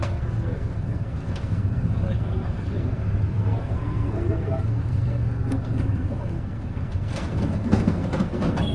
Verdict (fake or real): fake